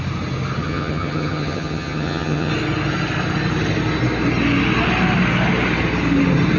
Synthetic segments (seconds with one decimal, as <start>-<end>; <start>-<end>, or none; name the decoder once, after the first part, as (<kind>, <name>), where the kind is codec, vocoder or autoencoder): 0.6-2.5 (vocoder, HiFi-GAN)

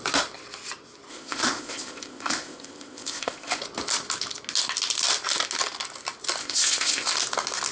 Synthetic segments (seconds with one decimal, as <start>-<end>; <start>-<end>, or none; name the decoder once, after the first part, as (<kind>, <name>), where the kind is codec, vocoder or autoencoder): 1.1-3.6 (codec, ZipCodec); 6.4-7.1